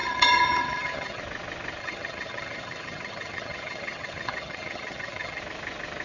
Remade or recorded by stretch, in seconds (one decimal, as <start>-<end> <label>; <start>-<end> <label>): 0.0-1.2 remade; 1.2-1.8 recorded; 1.8-5.4 remade; 5.4-6.0 recorded